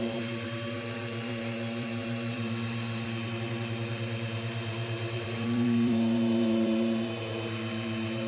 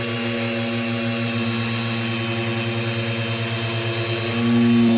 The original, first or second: second